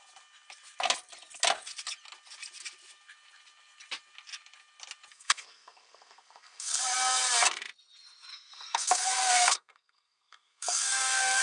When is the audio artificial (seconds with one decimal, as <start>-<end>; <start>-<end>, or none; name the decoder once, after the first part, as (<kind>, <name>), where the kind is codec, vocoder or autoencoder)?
5.1-6.8 (codec, SNAC); 8.3-11.4